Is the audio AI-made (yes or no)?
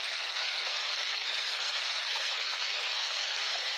yes